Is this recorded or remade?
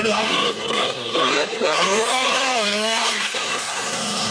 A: remade